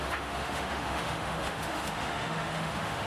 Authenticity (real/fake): fake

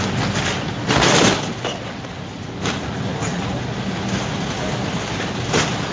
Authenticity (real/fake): real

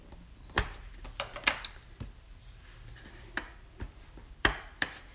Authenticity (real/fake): fake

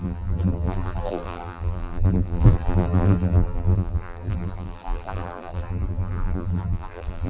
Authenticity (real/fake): fake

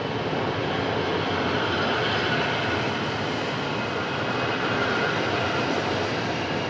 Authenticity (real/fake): real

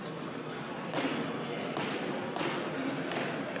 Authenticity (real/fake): real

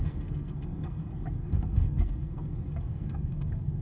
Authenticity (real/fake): fake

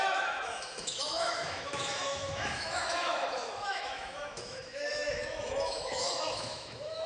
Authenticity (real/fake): fake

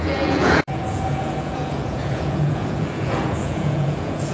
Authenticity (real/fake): fake